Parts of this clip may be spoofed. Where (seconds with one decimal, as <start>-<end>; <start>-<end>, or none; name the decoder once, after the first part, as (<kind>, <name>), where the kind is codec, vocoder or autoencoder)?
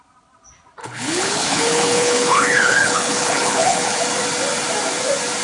0.8-4.0 (codec, HILCodec)